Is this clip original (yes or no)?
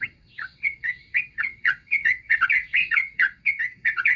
no